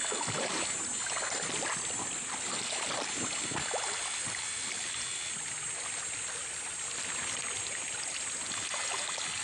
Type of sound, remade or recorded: recorded